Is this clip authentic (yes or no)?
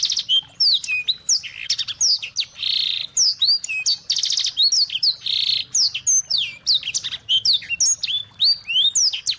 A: yes